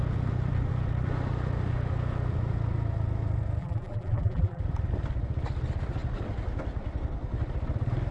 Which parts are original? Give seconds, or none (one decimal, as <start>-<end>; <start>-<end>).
0.0-3.6; 4.6-8.1

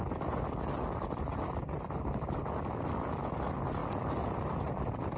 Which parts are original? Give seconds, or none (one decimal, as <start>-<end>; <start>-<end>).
0.0-1.3; 3.2-5.2